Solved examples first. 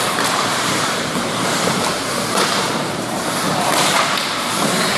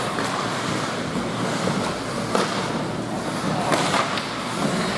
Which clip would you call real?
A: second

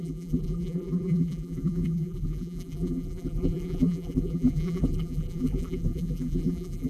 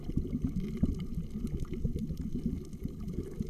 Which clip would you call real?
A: second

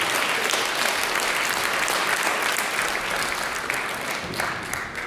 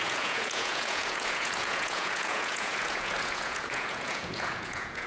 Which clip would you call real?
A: first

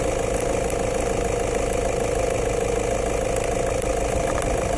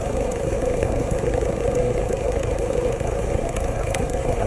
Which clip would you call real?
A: first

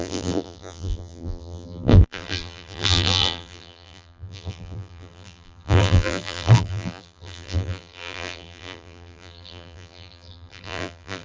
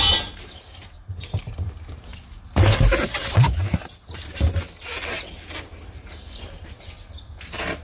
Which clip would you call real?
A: second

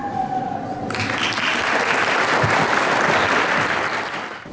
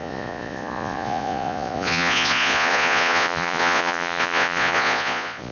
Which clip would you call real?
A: first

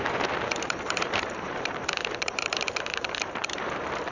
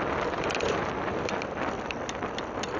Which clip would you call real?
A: second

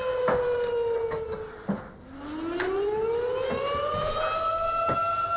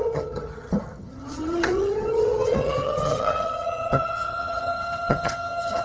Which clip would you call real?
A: first